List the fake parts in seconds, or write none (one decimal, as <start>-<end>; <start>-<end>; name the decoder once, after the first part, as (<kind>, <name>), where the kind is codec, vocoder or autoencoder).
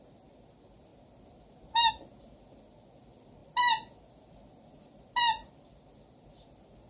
none